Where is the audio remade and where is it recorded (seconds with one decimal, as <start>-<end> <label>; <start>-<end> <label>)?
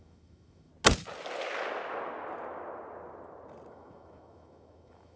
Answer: 0.0-0.7 remade; 0.7-3.7 recorded; 3.7-5.2 remade